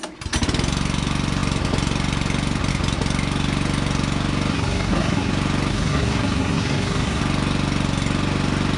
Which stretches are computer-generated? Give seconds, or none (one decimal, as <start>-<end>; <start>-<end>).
4.5-5.3; 5.7-7.2

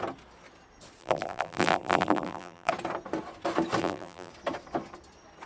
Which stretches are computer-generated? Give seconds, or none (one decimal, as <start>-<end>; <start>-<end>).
1.0-2.7; 3.8-4.3

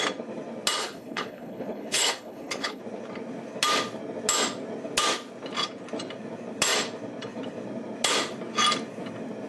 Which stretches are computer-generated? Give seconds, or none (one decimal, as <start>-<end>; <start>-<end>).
0.8-2.8

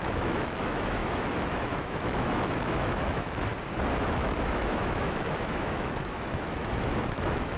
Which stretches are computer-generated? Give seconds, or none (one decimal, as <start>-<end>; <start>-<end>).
0.0-3.5; 4.0-7.6

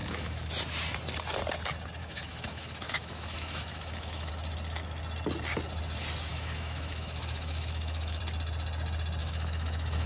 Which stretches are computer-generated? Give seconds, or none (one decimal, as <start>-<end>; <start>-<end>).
0.0-0.5; 2.0-4.3; 6.3-8.2; 9.2-10.1

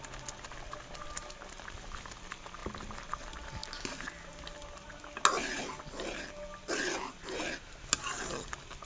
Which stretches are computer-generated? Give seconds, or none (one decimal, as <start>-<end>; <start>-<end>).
none